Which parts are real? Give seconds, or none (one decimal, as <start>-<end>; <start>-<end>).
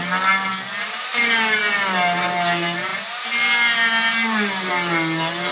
0.0-5.5